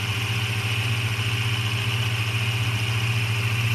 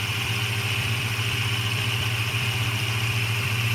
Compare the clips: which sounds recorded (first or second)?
first